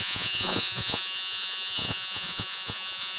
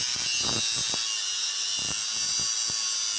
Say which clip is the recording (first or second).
second